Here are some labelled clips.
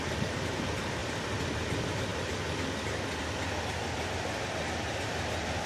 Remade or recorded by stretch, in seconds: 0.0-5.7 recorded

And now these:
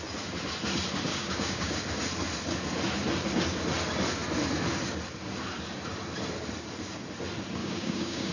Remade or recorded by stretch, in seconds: 0.0-1.1 recorded; 1.1-1.8 remade; 1.8-7.6 recorded; 7.6-8.3 remade

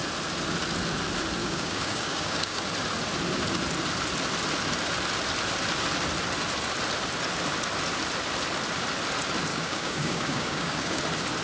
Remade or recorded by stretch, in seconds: 0.0-1.4 recorded; 1.4-2.6 remade; 2.6-9.5 recorded; 9.5-11.0 remade; 11.0-11.4 recorded

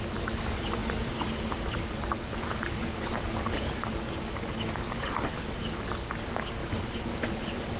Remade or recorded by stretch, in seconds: 0.0-7.8 remade